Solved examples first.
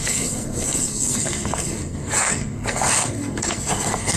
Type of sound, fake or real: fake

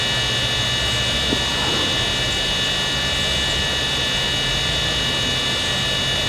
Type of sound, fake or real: real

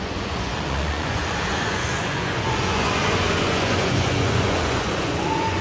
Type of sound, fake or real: fake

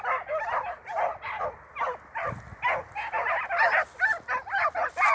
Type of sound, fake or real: real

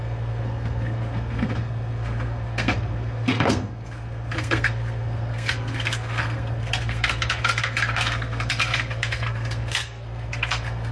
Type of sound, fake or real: fake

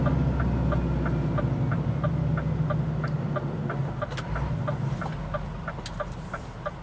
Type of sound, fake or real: real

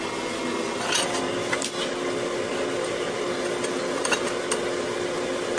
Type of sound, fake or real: real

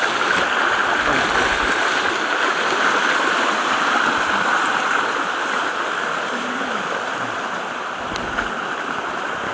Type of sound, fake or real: real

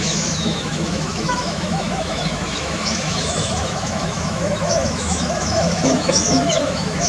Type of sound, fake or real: fake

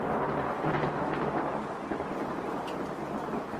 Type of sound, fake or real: real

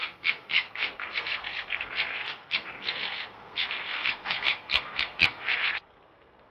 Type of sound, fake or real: fake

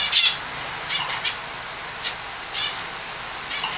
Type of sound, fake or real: real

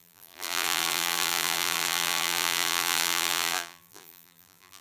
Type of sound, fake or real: fake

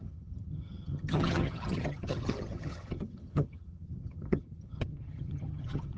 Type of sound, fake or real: fake